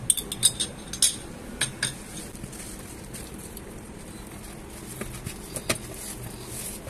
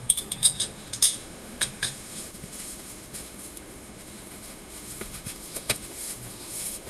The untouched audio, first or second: first